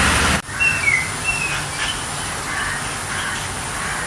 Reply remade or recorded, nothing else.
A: recorded